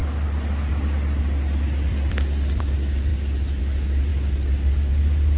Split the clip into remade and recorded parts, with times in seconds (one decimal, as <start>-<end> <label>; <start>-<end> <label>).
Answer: 0.0-1.9 recorded; 1.9-2.6 remade; 2.6-5.4 recorded